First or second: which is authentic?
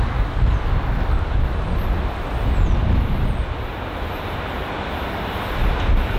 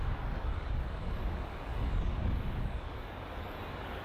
first